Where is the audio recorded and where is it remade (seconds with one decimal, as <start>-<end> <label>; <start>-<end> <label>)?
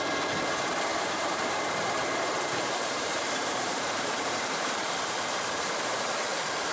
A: 0.0-0.9 recorded; 0.9-4.9 remade; 4.9-6.7 recorded